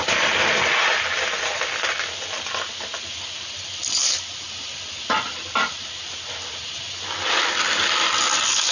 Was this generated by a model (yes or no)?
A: no